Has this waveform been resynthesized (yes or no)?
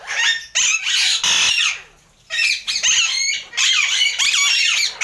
no